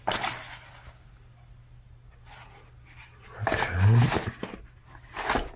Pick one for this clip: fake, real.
real